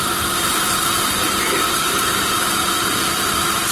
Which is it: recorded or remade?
remade